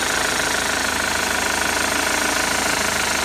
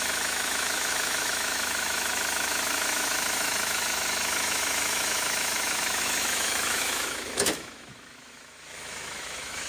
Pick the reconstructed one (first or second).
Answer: second